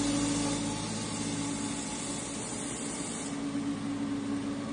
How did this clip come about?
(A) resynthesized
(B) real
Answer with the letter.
B